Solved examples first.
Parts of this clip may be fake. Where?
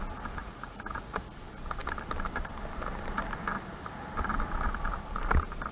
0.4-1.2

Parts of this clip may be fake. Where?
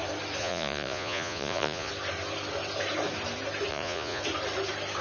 0.4-1.9; 3.7-4.2